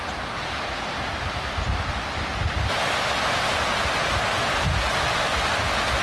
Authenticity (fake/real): real